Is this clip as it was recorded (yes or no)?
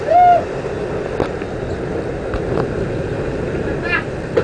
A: yes